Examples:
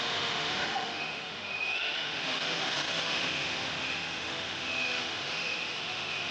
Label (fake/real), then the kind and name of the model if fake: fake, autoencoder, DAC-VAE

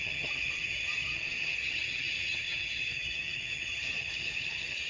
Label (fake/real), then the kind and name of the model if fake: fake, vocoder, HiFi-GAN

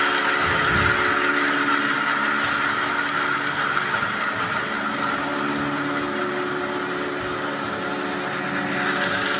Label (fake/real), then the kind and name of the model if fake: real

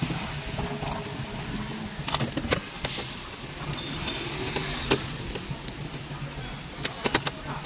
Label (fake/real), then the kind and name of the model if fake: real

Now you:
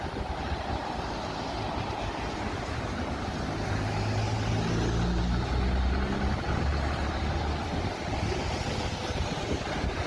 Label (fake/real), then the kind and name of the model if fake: real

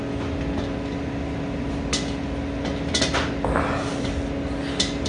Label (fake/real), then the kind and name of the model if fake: real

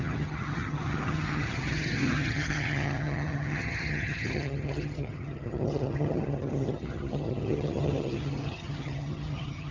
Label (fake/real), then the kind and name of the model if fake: fake, vocoder, HiFi-GAN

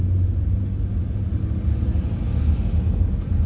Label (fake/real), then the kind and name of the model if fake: real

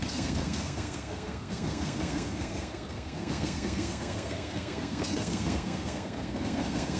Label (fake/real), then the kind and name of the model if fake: fake, codec, SNAC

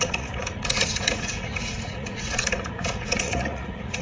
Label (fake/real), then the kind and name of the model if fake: fake, vocoder, Vocos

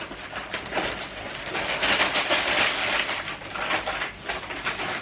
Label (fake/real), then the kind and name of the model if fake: real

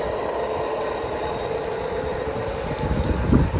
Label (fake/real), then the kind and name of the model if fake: fake, vocoder, BigVGAN v2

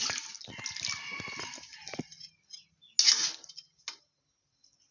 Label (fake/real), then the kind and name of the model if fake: real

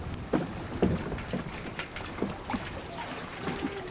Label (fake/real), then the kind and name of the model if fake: real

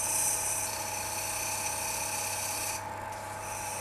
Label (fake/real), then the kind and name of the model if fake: real